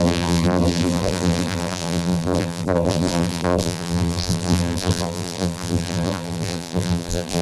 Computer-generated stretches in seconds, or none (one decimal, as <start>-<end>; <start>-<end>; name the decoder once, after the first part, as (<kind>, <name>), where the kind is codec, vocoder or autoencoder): 0.0-7.4 (vocoder, BigVGAN v2)